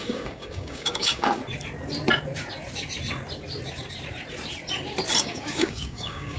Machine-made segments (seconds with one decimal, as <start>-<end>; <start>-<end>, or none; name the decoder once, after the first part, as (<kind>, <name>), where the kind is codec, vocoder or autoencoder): 0.0-1.4 (codec, DAC); 5.2-6.4